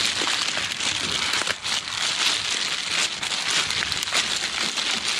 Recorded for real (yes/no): yes